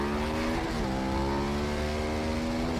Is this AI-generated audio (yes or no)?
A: no